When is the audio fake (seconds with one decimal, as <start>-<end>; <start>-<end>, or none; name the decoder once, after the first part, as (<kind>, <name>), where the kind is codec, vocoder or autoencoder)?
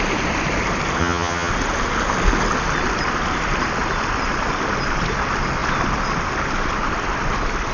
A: 1.0-1.5 (vocoder, HiFi-GAN)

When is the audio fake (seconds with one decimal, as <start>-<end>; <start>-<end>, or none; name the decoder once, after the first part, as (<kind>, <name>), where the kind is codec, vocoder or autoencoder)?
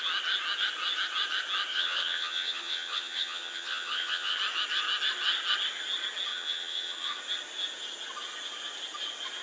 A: 1.7-4.4 (vocoder, HiFi-GAN); 6.3-7.2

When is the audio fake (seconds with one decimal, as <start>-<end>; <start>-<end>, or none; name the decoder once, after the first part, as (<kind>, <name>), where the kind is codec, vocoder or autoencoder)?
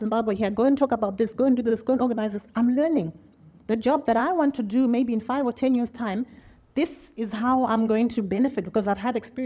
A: 0.0-4.2 (vocoder, HiFi-GAN); 5.2-6.4; 7.4-9.5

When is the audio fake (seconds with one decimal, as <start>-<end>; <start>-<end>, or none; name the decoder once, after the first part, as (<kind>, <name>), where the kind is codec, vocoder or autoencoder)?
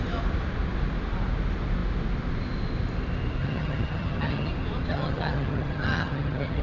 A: 3.4-4.5 (vocoder, HiFi-GAN); 4.9-6.6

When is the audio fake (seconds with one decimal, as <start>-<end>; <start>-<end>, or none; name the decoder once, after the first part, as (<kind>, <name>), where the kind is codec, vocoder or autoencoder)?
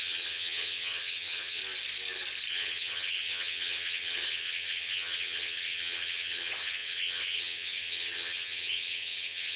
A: 0.0-1.6 (vocoder, HiFi-GAN); 2.5-9.6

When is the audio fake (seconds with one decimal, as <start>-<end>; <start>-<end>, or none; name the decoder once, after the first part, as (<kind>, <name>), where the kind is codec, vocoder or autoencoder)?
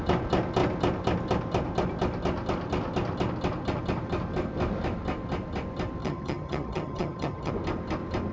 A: 6.0-7.5 (vocoder, HiFi-GAN)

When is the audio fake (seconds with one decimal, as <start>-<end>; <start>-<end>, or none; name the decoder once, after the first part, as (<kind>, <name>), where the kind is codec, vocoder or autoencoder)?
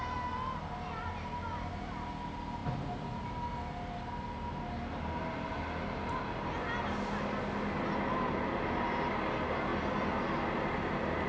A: none